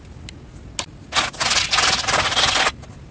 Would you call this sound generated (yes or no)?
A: no